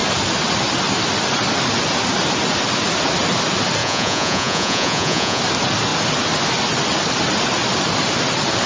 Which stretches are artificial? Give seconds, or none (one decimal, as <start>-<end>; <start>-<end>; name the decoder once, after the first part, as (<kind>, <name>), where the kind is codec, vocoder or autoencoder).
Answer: 3.8-5.4 (vocoder, Vocos)